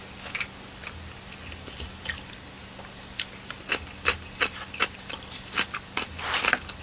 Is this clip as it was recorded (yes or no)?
yes